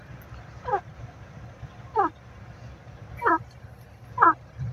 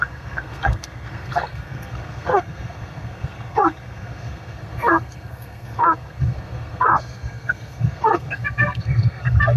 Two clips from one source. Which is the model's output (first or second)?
second